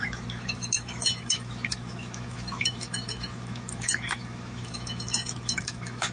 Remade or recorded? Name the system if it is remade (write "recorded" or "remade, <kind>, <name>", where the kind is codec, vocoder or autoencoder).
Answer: remade, autoencoder, DAC-VAE